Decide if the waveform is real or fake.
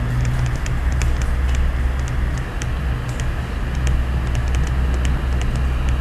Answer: real